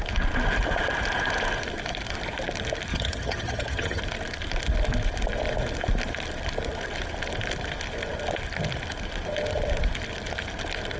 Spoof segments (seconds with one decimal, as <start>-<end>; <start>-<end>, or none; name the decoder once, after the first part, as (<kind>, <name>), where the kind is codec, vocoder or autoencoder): 2.9-4.0 (vocoder, HiFi-GAN)